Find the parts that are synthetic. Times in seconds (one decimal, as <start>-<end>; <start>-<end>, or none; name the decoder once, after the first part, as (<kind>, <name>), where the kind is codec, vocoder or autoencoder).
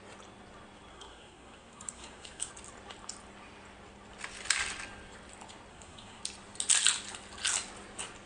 0.9-2.5 (codec, SNAC); 5.7-6.2